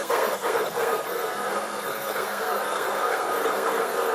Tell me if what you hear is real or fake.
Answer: fake